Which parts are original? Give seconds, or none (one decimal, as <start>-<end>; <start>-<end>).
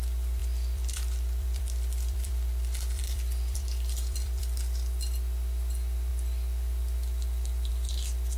0.0-0.4; 4.4-8.4